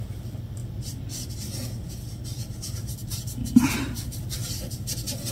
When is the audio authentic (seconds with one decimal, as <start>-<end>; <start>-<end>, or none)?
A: 0.0-5.3